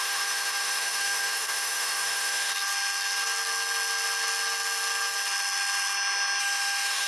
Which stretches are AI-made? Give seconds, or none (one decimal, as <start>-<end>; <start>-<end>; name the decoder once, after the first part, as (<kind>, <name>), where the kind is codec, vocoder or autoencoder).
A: 0.0-2.5 (autoencoder, DAC-VAE); 6.4-7.1

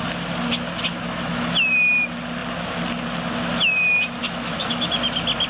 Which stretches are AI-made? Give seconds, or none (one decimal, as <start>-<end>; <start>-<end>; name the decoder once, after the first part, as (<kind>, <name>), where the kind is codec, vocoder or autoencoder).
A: 0.9-1.5 (autoencoder, DAC-VAE); 4.2-4.9

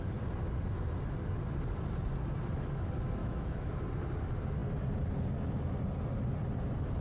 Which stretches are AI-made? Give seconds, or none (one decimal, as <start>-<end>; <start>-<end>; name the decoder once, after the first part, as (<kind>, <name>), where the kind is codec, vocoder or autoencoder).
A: 3.2-3.8 (autoencoder, DAC-VAE)